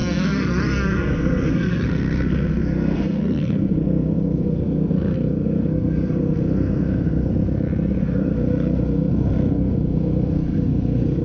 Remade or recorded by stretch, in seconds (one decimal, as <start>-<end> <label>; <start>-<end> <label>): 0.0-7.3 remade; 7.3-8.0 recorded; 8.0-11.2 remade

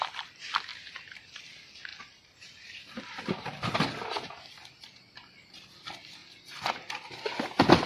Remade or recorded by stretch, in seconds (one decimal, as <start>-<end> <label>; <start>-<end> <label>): 0.0-0.7 recorded; 0.7-1.4 remade; 1.4-1.9 recorded; 1.9-3.0 remade; 3.0-6.2 recorded; 6.2-6.9 remade; 6.9-7.9 recorded

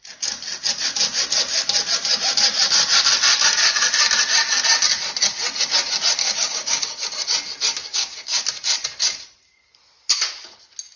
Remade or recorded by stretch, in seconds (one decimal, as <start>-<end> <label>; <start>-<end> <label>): 0.0-6.2 recorded; 6.2-7.0 remade; 7.0-7.8 recorded; 7.8-8.4 remade; 8.4-11.0 recorded